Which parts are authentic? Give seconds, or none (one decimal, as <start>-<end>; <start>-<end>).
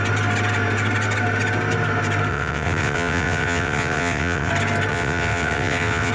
0.0-2.3; 4.5-4.9